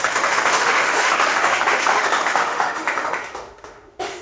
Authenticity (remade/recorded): remade